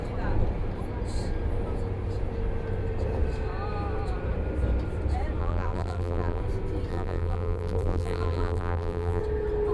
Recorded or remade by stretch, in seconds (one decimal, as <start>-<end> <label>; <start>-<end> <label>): 0.0-5.4 recorded; 5.4-6.4 remade; 6.4-6.9 recorded; 6.9-9.2 remade; 9.2-9.7 recorded